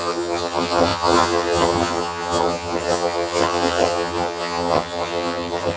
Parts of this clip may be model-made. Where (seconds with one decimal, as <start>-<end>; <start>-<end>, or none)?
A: 0.0-5.8